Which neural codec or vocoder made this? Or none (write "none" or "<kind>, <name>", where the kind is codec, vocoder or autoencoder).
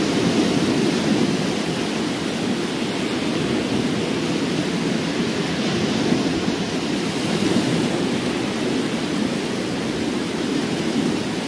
none